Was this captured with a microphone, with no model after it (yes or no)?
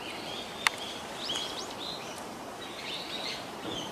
no